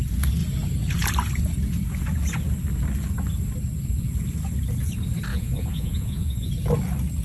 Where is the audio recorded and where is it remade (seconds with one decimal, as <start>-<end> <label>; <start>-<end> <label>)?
0.0-5.3 recorded; 5.3-6.5 remade; 6.5-7.2 recorded